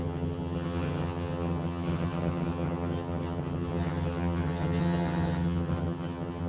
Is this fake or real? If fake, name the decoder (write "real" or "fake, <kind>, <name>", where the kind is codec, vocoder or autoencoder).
fake, vocoder, HiFi-GAN